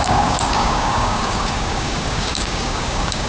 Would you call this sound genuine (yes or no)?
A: no